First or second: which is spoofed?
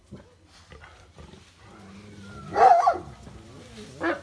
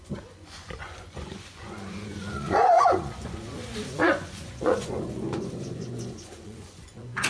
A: second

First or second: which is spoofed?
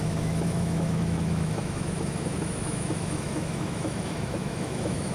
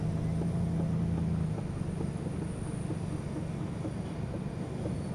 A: first